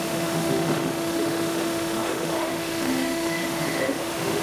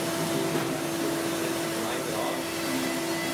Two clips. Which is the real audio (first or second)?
second